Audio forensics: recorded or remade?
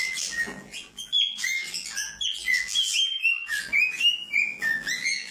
remade